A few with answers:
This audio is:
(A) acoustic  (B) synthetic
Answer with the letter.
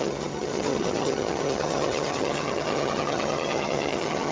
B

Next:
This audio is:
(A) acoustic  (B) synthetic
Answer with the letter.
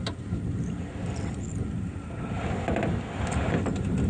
A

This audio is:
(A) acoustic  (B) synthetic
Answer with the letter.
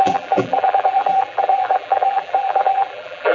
B